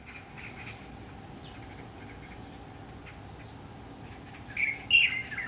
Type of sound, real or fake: real